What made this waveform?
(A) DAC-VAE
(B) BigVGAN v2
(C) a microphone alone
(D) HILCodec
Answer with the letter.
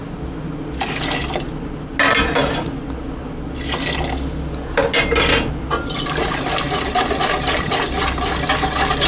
C